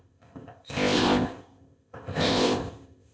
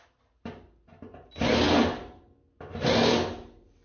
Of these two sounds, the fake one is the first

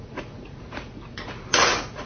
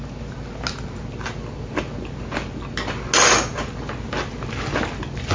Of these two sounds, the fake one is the first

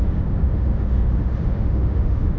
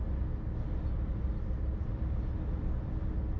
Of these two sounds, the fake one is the first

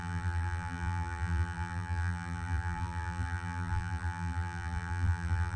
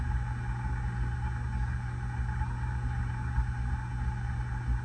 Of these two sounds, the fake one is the first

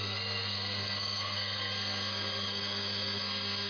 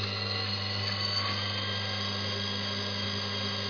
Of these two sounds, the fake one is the first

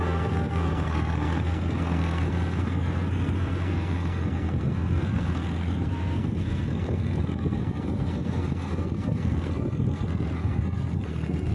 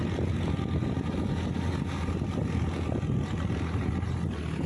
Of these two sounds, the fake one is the first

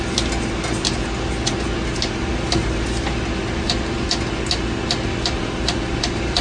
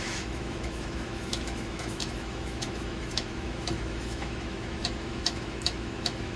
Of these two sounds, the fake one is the second